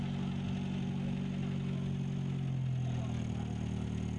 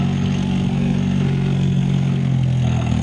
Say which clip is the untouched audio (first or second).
first